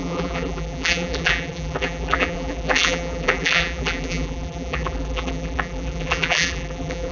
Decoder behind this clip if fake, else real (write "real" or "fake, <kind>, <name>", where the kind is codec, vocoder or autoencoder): fake, vocoder, BigVGAN v2